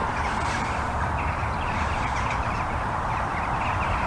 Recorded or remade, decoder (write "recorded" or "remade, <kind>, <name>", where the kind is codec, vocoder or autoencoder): remade, vocoder, BigVGAN v2